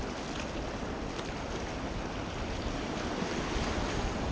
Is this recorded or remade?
recorded